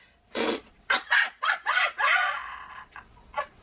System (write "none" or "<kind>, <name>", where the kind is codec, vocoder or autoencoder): vocoder, Vocos